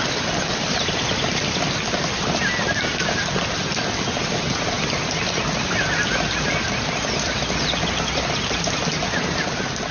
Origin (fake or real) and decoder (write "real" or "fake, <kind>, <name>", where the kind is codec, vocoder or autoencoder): real